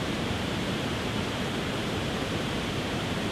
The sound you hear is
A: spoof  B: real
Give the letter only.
A